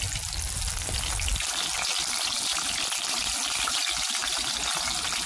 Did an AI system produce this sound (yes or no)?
no